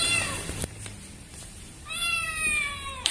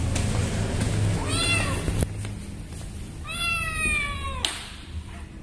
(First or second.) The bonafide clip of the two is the second